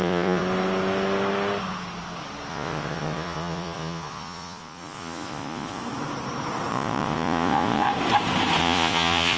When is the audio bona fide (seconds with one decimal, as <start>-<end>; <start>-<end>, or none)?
0.4-2.5; 5.8-6.7; 7.9-8.6